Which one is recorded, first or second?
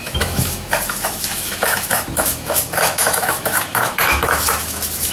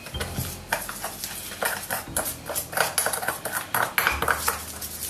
second